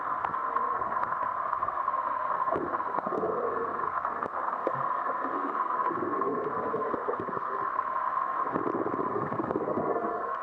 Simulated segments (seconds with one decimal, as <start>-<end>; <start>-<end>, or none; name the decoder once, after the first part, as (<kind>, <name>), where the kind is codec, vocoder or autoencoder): 0.0-8.6 (codec, SNAC); 9.1-10.4